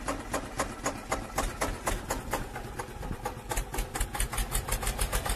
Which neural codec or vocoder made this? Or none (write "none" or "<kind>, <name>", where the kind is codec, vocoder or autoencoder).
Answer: none